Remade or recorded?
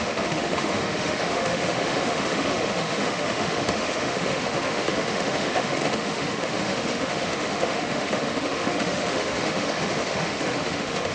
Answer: remade